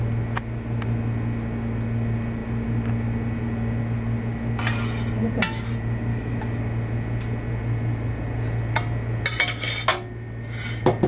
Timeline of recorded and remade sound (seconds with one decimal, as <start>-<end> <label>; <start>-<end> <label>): 0.0-6.1 recorded; 6.1-6.6 remade; 6.6-11.1 recorded